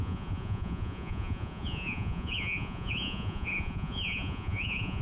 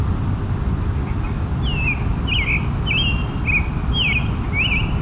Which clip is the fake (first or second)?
first